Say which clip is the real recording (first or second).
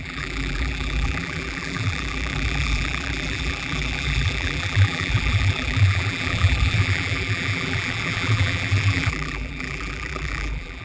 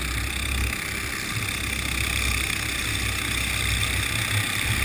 second